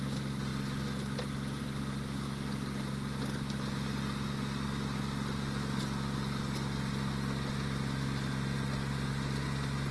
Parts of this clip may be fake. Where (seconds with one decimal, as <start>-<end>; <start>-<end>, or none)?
none